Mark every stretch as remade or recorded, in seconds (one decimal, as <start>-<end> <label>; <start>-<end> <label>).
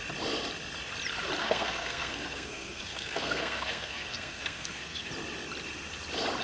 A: 0.0-1.4 recorded; 1.4-5.1 remade; 5.1-6.4 recorded